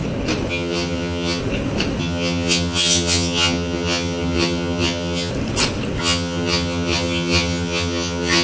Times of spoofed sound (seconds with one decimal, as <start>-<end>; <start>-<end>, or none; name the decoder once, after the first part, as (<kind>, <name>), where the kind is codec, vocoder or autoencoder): 0.5-1.4 (vocoder, HiFi-GAN); 2.0-5.3; 6.0-8.4